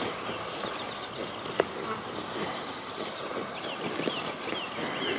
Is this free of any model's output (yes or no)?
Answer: yes